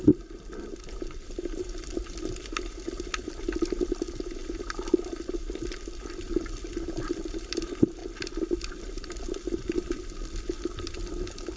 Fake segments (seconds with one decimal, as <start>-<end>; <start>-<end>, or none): 0.0-8.0; 8.7-11.6